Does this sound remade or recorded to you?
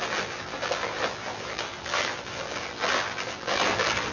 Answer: remade